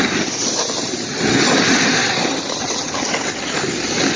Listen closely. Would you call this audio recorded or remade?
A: recorded